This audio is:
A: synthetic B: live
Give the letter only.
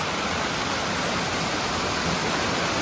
B